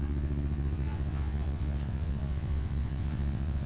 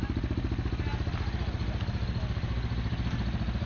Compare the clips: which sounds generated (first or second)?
first